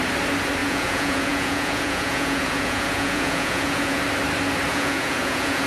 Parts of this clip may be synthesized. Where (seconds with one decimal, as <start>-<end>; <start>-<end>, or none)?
0.6-4.0; 4.7-5.7